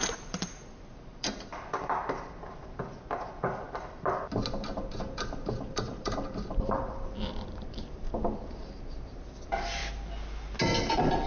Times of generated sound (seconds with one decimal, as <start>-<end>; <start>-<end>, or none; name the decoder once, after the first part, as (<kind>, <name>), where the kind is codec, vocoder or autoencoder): 0.0-1.5 (vocoder, BigVGAN v2); 5.0-9.8; 10.9-11.3